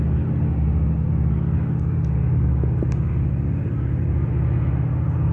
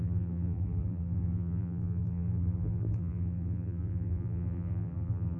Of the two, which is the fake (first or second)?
second